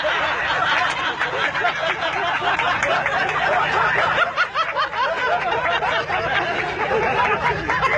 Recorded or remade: recorded